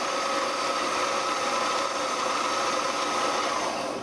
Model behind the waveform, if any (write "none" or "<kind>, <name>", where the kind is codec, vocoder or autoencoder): vocoder, BigVGAN v2